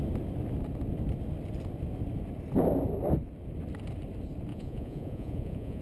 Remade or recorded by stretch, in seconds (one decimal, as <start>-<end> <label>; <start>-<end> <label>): 0.0-4.5 recorded; 4.5-5.8 remade